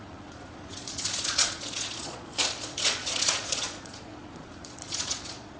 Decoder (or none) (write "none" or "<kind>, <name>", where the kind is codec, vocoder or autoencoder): vocoder, Vocos